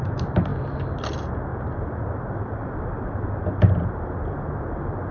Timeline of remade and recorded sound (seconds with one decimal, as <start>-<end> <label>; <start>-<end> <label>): 0.0-5.1 recorded